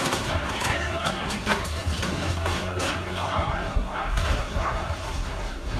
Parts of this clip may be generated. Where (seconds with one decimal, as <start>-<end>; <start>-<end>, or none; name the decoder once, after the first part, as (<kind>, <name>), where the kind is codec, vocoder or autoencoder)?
0.0-5.8 (codec, SNAC)